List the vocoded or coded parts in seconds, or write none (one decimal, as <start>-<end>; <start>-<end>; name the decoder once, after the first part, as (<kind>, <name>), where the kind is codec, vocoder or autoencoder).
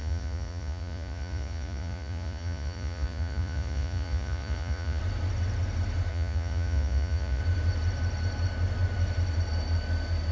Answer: 0.0-5.0 (vocoder, Vocos); 6.1-7.4